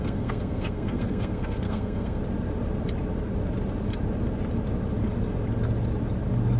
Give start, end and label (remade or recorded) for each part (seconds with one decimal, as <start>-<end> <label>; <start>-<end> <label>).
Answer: 0.0-2.2 remade; 2.2-6.6 recorded